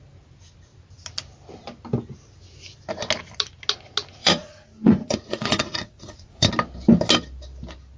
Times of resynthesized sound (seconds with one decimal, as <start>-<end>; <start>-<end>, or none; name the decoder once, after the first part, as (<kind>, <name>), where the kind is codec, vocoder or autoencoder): 4.2-6.5 (vocoder, Vocos)